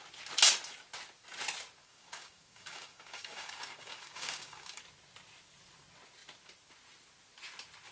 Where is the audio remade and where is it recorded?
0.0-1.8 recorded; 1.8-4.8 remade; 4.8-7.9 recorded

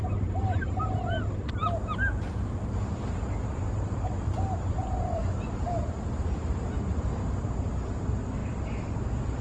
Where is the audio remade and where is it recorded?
0.0-9.4 recorded

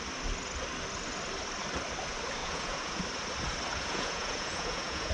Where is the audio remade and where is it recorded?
0.0-2.4 recorded; 2.4-3.0 remade; 3.0-3.7 recorded; 3.7-5.1 remade

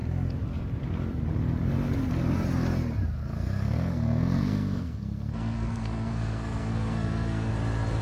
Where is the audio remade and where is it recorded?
0.0-3.2 recorded; 3.2-7.5 remade; 7.5-8.0 recorded

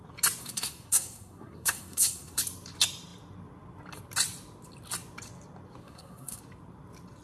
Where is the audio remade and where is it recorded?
0.0-0.4 recorded; 0.4-2.4 remade; 2.4-5.8 recorded; 5.8-6.4 remade; 6.4-7.2 recorded

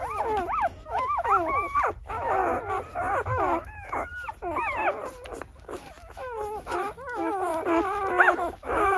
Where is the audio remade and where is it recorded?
0.0-2.4 remade; 2.4-2.9 recorded; 2.9-4.1 remade; 4.1-5.6 recorded; 5.6-7.5 remade; 7.5-8.2 recorded; 8.2-9.0 remade